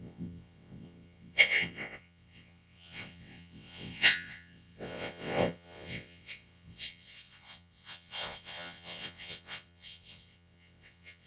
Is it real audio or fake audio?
fake